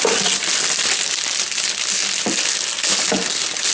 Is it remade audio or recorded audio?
recorded